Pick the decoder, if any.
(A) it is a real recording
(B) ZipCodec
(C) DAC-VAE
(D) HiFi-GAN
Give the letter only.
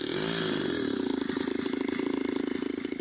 A